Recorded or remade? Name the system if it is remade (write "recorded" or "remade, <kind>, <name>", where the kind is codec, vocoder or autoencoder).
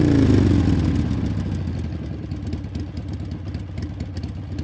recorded